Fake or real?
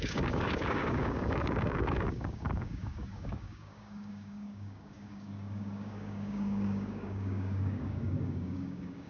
fake